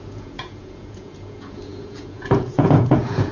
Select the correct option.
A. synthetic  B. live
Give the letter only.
A